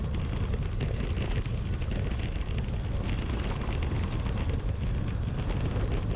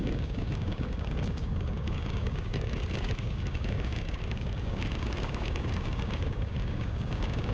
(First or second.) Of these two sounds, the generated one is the second